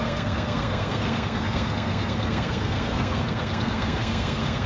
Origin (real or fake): fake